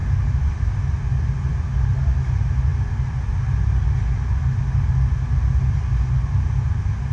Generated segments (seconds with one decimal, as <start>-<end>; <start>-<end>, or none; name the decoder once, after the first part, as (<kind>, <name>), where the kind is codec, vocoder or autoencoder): none